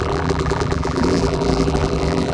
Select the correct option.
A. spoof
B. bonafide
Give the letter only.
A